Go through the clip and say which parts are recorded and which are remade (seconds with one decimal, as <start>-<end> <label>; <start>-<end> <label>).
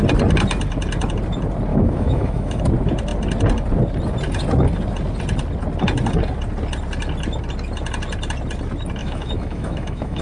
0.0-1.7 recorded; 1.7-2.6 remade; 2.6-9.0 recorded; 9.0-10.2 remade